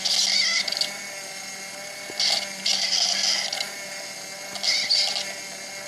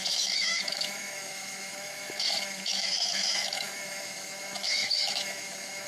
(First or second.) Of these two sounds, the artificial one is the second